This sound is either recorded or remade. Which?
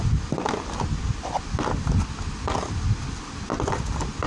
recorded